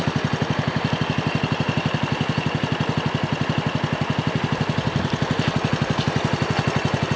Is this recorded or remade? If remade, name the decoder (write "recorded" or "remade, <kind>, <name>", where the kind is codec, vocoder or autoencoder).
recorded